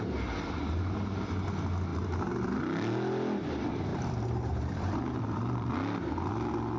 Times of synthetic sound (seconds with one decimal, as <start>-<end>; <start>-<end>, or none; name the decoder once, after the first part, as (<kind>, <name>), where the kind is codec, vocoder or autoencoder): 1.9-2.6 (vocoder, BigVGAN v2); 3.9-5.7